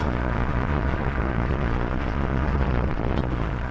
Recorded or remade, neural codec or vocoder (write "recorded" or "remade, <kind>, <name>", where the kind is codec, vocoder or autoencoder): remade, vocoder, Vocos